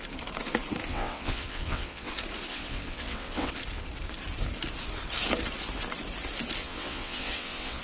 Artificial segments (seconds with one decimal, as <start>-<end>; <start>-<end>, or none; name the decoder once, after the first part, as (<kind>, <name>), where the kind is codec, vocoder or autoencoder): 0.9-2.1 (vocoder, WaveNeXt); 2.5-3.5; 6.6-7.8